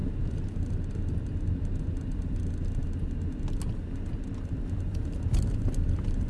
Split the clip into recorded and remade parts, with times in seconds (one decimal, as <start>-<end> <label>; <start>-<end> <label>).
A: 0.0-6.3 recorded